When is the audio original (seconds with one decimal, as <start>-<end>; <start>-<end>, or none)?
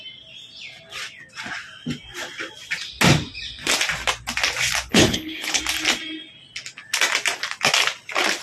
0.0-4.9; 5.6-8.4